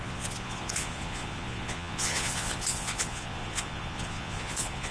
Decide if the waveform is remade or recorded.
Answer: remade